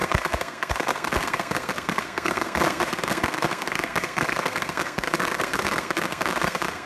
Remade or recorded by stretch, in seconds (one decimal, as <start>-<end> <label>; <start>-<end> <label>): 0.0-6.9 remade